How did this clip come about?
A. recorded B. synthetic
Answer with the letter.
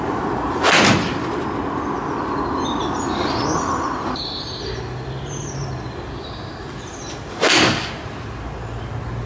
A